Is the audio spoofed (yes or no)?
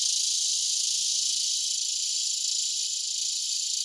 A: no